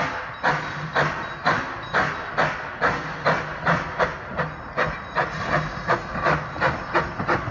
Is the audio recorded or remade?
recorded